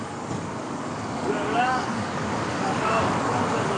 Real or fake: fake